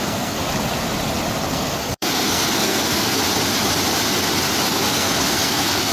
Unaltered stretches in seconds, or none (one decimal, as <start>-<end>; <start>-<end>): 0.4-1.4; 3.2-4.6